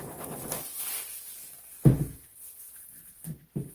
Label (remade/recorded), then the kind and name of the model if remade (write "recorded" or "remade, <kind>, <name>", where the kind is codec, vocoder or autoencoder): recorded